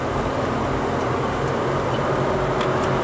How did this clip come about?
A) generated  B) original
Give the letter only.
B